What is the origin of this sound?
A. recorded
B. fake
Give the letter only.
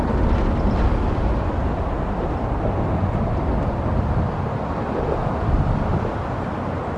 A